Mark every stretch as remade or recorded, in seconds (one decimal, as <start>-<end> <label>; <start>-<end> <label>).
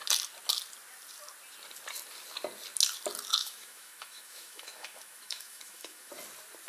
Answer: 0.0-3.4 recorded; 3.4-6.1 remade; 6.1-6.7 recorded